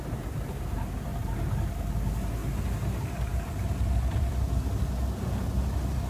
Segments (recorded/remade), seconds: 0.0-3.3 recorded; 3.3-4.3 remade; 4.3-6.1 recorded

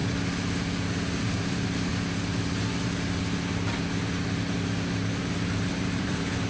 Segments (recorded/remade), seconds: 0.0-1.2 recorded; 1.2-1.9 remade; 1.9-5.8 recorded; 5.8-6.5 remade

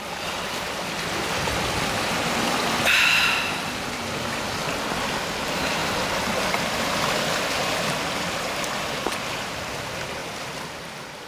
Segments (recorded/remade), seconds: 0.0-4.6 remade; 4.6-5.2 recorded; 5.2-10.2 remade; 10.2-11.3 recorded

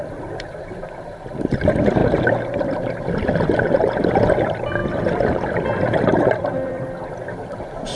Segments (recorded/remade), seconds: 0.0-2.0 remade; 2.0-4.0 recorded; 4.0-8.0 remade

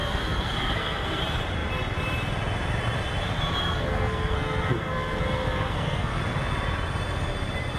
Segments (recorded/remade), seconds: 0.0-1.2 remade; 1.2-3.6 recorded; 3.6-6.2 remade; 6.2-7.8 recorded

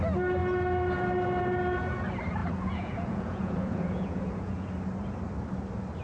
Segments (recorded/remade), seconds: 0.0-2.4 recorded; 2.4-4.7 remade; 4.7-6.0 recorded

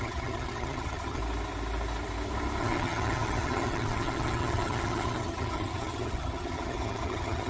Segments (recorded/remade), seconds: 0.0-1.2 remade; 1.2-2.6 recorded; 2.6-7.5 remade